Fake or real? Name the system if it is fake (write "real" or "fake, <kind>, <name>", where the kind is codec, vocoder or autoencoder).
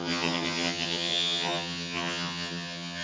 fake, vocoder, HiFi-GAN